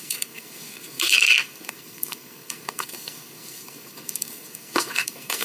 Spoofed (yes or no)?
yes